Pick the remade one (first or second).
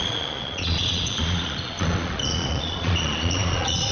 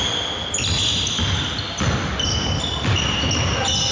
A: first